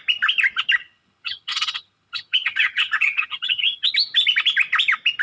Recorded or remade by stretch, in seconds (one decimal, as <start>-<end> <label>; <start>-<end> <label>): 0.0-0.8 recorded; 0.8-3.9 remade; 3.9-5.2 recorded